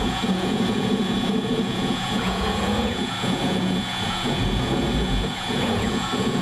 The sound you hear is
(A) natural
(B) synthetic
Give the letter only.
B